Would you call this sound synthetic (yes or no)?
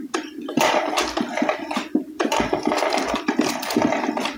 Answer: yes